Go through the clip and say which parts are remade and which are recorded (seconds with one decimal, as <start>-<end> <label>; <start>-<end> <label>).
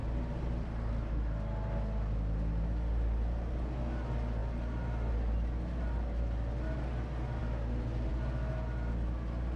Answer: 0.0-0.9 remade; 0.9-9.6 recorded